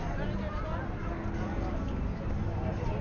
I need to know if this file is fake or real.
real